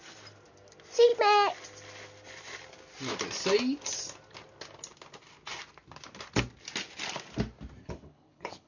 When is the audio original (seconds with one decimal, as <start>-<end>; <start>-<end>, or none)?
0.0-7.8